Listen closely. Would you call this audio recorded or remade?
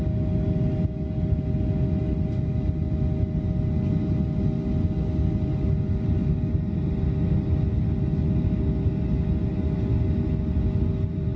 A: recorded